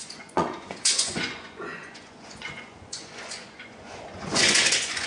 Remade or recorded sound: remade